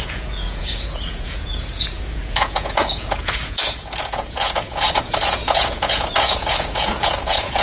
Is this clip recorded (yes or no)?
no